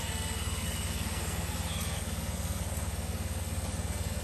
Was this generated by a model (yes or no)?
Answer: yes